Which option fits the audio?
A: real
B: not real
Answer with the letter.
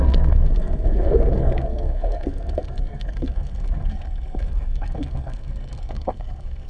B